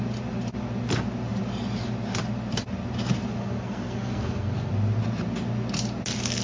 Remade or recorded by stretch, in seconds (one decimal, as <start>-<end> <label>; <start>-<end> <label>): 0.0-3.4 recorded; 3.4-4.7 remade; 4.7-6.4 recorded